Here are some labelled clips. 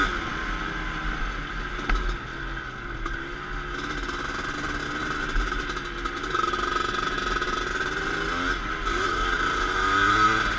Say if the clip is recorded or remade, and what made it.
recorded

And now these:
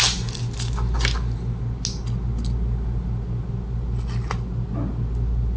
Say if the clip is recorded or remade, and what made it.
recorded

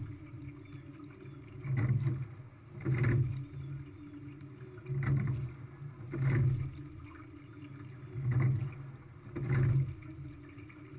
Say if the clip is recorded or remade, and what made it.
recorded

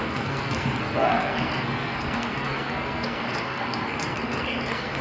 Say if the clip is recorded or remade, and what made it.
remade, codec, SNAC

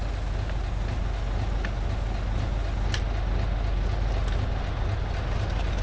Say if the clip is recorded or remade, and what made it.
recorded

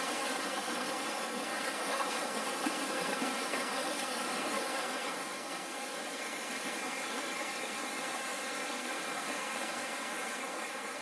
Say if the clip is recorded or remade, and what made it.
remade, codec, SNAC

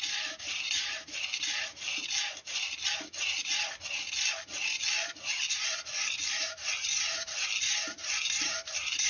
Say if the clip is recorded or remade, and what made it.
recorded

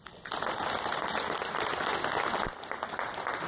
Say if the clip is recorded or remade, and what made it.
recorded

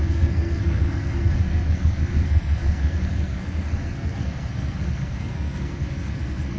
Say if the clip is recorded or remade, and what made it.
remade, codec, SNAC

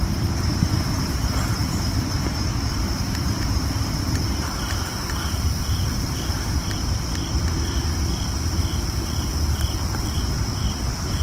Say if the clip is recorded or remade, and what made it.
remade, vocoder, BigVGAN v2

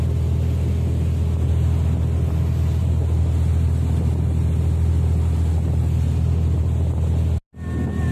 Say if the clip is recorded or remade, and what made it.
recorded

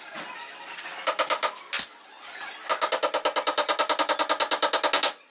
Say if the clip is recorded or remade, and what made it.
recorded